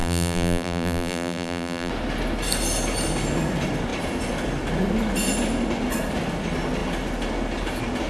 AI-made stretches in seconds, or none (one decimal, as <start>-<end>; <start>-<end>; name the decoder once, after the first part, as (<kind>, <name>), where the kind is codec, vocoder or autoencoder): 0.0-1.9 (vocoder, BigVGAN v2)